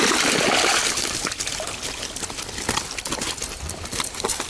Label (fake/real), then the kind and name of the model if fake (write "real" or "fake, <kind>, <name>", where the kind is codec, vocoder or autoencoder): real